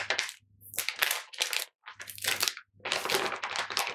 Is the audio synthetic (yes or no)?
no